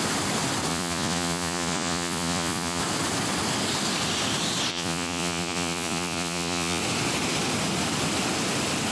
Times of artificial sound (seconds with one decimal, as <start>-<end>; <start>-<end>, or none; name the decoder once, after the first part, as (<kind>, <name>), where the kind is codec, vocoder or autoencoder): 0.7-2.8 (vocoder, Vocos); 4.7-6.8